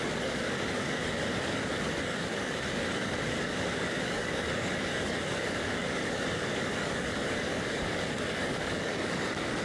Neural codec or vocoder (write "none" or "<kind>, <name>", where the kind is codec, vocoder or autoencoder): codec, DAC